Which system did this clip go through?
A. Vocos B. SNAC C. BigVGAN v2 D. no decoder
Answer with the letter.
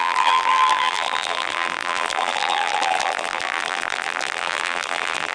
C